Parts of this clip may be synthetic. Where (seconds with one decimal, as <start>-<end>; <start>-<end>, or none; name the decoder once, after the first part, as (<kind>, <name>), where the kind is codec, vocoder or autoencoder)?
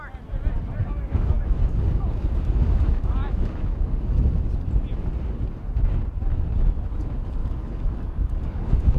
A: 0.8-4.2 (codec, DAC); 7.4-9.0